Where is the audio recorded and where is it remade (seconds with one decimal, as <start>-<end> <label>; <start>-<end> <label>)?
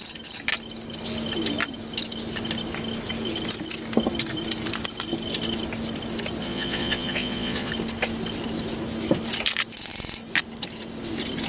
0.0-6.4 recorded; 6.4-7.7 remade; 7.7-11.5 recorded